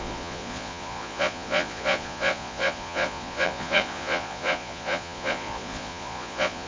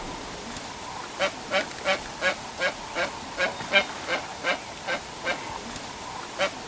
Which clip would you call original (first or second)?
second